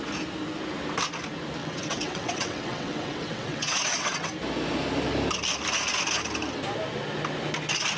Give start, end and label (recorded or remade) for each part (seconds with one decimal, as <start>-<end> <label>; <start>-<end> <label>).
0.0-1.6 recorded; 1.6-4.3 remade; 4.3-8.0 recorded